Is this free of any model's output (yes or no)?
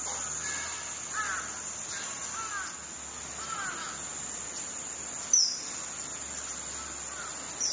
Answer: yes